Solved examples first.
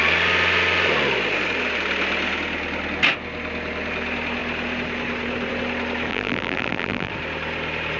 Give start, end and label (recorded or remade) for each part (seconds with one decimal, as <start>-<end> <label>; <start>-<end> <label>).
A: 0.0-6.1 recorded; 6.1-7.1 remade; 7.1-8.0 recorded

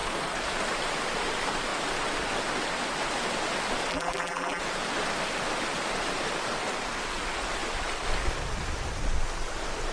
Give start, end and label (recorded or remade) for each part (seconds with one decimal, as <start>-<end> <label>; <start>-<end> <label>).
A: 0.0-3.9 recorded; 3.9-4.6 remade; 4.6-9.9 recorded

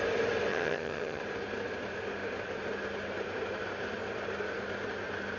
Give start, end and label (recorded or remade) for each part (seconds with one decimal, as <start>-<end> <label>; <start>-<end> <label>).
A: 0.0-0.5 recorded; 0.5-1.2 remade; 1.2-5.4 recorded

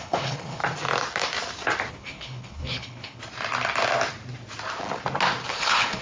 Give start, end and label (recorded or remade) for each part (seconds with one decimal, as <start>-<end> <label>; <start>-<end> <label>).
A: 0.0-0.6 remade; 0.6-1.9 recorded; 1.9-3.2 remade; 3.2-5.5 recorded; 5.5-6.0 remade

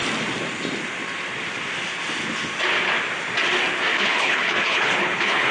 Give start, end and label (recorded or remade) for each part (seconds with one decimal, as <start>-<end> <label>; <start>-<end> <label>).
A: 0.0-3.9 recorded; 3.9-5.5 remade

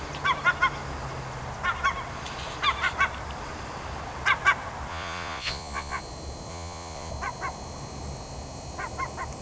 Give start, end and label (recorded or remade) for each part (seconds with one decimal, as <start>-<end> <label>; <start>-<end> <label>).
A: 0.0-4.9 recorded; 4.9-6.0 remade; 6.0-6.5 recorded; 6.5-7.1 remade; 7.1-9.4 recorded

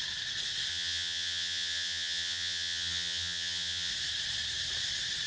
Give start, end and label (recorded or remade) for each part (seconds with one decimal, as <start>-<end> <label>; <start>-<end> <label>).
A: 0.0-0.7 recorded; 0.7-3.9 remade; 3.9-5.3 recorded

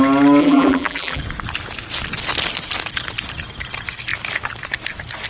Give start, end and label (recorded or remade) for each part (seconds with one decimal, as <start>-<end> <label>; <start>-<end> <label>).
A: 0.0-0.4 recorded; 0.4-1.2 remade; 1.2-5.3 recorded